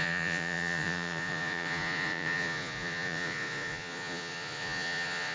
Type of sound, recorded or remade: remade